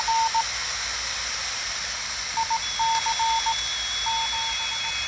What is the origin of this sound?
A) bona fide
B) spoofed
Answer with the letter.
A